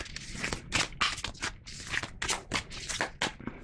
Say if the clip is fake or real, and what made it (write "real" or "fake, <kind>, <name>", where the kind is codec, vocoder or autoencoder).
real